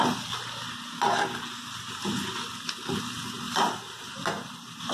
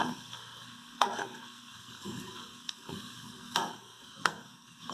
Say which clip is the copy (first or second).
second